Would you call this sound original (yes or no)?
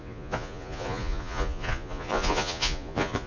no